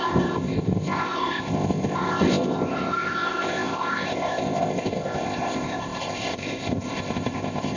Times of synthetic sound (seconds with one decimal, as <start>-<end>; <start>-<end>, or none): 0.0-7.8